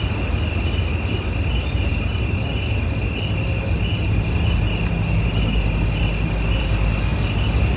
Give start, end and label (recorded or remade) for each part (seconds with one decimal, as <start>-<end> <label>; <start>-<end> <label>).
0.0-7.8 recorded